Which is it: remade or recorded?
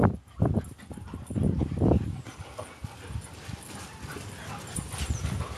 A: recorded